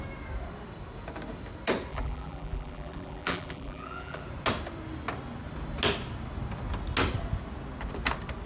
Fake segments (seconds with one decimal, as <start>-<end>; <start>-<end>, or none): 1.9-4.2